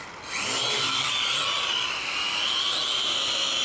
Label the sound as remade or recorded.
recorded